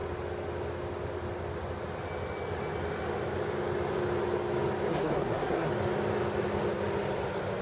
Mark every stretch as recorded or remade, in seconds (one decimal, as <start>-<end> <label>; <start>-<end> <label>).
0.0-4.9 recorded; 4.9-5.7 remade; 5.7-7.6 recorded